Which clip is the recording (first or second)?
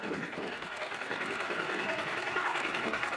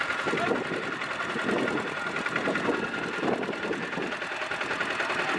second